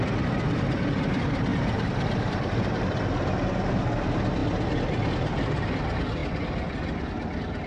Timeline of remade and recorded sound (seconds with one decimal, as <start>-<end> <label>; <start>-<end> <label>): 0.0-1.5 recorded; 1.5-3.0 remade; 3.0-7.7 recorded